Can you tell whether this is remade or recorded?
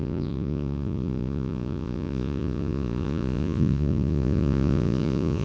remade